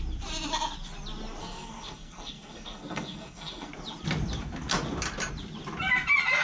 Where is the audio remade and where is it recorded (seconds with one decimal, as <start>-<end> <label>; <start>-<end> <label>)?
0.0-1.4 recorded; 1.4-3.7 remade; 3.7-6.4 recorded